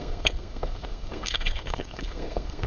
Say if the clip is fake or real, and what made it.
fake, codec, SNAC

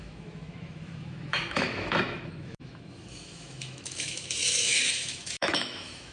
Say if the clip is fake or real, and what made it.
fake, autoencoder, DAC-VAE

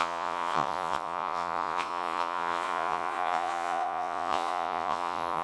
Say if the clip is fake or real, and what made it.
fake, vocoder, Vocos